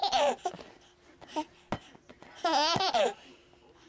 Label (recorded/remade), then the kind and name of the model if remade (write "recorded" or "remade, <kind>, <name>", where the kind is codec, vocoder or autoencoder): recorded